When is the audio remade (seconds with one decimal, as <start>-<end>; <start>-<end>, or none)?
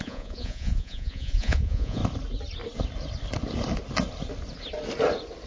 0.0-2.0